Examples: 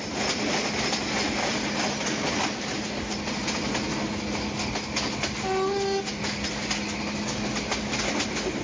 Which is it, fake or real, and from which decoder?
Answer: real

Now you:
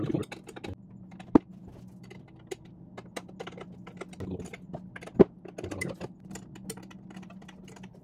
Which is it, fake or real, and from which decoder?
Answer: real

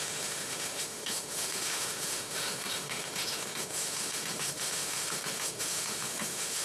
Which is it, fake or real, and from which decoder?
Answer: fake, autoencoder, DAC-VAE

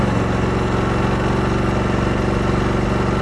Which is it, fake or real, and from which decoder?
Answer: real